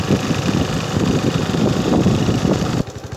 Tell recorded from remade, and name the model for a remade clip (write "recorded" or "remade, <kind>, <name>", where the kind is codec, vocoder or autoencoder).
remade, vocoder, BigVGAN v2